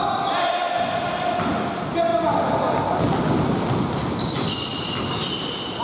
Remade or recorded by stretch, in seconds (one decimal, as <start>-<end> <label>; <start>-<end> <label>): 0.0-5.8 recorded